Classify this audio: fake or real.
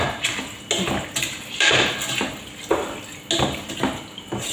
real